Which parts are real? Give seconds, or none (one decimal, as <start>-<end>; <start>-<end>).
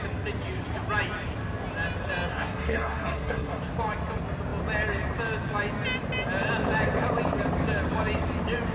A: 0.0-2.3; 3.6-8.7